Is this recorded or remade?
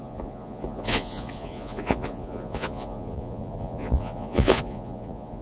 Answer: remade